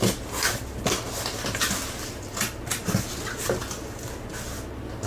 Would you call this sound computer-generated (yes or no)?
no